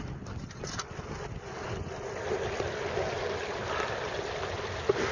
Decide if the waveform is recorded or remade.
recorded